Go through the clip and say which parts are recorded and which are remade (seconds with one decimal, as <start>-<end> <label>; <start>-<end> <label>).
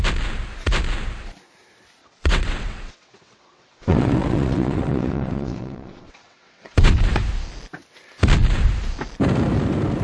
0.0-2.0 recorded; 2.0-7.1 remade; 7.1-10.0 recorded